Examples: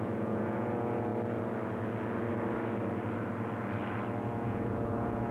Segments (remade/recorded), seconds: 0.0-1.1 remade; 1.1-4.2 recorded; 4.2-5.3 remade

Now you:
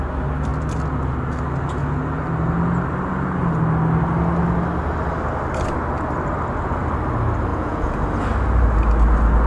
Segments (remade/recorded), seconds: 0.0-7.5 recorded; 7.5-8.0 remade; 8.0-9.5 recorded

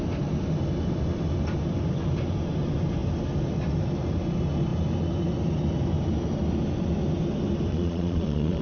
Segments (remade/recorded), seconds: 0.0-7.7 recorded; 7.7-8.6 remade

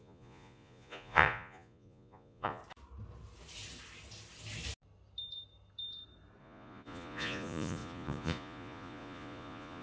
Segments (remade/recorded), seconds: 0.0-2.6 remade; 2.6-6.4 recorded; 6.4-9.8 remade

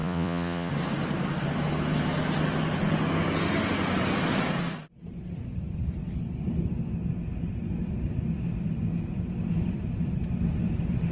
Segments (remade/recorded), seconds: 0.0-0.7 remade; 0.7-11.1 recorded